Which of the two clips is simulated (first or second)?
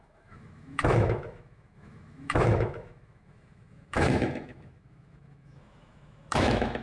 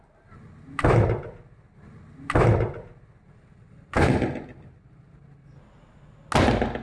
first